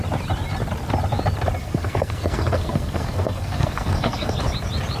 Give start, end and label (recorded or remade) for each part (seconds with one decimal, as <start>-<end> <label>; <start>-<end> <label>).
0.0-1.6 recorded; 1.6-4.4 remade; 4.4-5.0 recorded